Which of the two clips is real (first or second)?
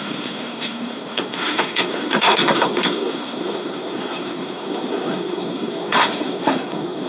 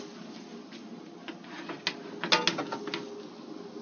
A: second